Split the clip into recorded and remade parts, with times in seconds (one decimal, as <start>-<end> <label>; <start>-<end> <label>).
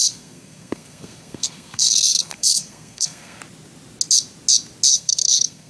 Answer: 0.0-3.4 remade; 3.4-4.9 recorded; 4.9-5.7 remade